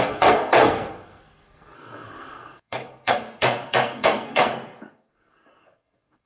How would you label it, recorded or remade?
remade